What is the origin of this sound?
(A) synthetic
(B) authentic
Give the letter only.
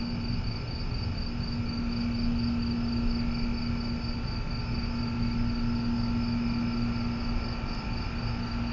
B